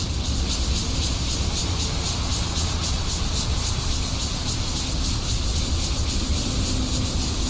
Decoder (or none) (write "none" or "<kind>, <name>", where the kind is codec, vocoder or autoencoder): none